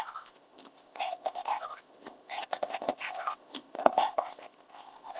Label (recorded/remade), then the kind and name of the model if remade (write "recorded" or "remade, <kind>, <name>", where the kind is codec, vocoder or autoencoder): remade, codec, ZipCodec